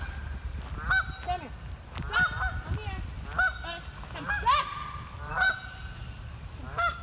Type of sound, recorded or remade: recorded